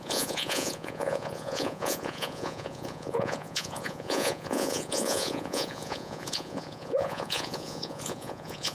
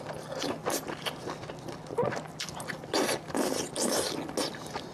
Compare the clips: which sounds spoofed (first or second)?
first